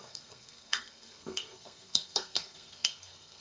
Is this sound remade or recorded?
remade